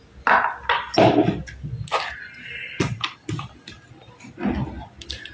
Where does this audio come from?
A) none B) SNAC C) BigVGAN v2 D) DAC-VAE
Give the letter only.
A